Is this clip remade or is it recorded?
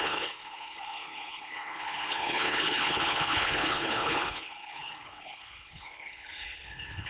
remade